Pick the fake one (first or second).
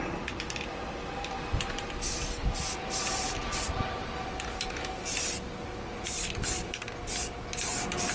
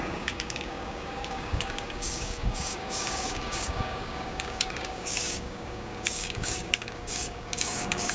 second